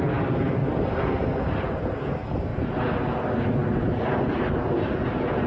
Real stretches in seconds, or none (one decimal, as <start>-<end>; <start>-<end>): 0.0-5.5